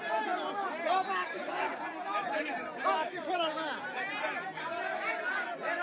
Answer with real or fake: real